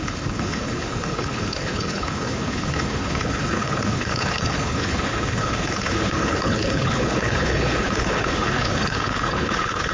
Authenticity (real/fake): fake